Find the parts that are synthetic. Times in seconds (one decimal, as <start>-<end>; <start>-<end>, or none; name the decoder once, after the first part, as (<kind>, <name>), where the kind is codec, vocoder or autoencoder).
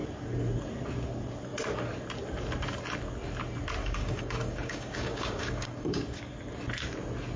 3.8-6.3 (codec, DAC)